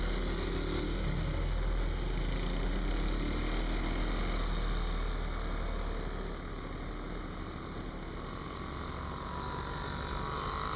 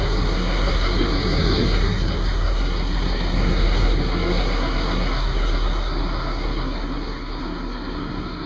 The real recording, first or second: first